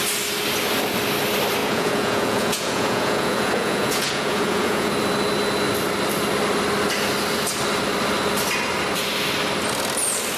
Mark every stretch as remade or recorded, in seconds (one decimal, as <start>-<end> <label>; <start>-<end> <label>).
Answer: 0.0-1.6 recorded; 1.6-4.9 remade; 4.9-10.4 recorded